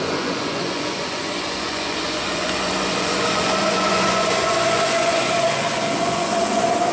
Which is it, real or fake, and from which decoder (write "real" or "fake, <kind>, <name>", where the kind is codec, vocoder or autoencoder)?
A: fake, vocoder, Vocos